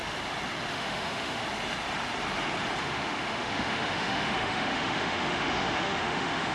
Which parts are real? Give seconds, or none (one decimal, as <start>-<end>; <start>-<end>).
0.0-0.7; 1.4-2.8